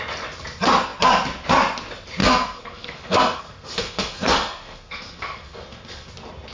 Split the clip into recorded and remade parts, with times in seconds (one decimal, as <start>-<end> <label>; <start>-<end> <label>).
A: 0.0-2.2 recorded; 2.2-6.1 remade; 6.1-6.5 recorded